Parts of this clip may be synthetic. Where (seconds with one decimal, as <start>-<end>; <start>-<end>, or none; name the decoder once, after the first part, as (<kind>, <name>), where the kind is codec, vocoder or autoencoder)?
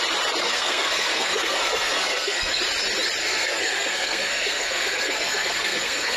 0.4-2.6 (codec, SNAC); 3.2-6.2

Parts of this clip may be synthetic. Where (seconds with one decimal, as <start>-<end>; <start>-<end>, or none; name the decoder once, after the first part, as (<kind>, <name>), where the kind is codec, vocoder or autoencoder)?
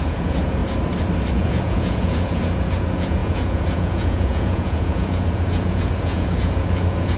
0.0-0.6 (vocoder, Vocos); 1.3-7.2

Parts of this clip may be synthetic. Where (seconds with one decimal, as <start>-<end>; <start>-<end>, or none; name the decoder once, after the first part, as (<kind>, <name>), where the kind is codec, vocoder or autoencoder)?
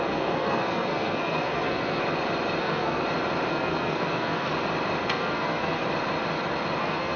0.0-2.0 (codec, SNAC); 2.6-3.0; 3.5-4.5; 5.1-5.8; 6.8-7.2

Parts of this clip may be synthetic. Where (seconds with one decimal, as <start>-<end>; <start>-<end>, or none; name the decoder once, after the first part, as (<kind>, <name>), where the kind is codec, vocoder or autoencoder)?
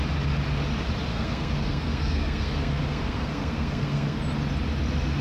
1.1-4.2 (codec, SNAC)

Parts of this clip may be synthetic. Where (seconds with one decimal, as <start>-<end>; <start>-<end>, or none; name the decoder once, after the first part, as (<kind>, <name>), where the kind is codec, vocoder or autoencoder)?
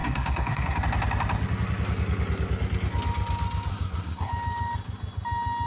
0.0-0.8 (codec, SNAC); 3.7-4.3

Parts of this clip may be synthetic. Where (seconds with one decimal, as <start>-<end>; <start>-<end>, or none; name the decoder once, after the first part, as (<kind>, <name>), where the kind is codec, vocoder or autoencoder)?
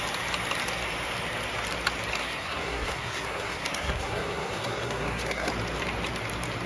2.2-5.5 (codec, SNAC)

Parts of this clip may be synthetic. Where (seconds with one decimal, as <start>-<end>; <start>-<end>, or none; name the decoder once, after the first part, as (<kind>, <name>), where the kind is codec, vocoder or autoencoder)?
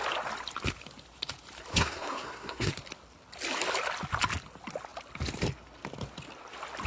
1.7-2.7 (codec, SNAC)